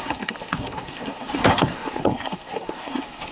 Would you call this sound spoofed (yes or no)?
yes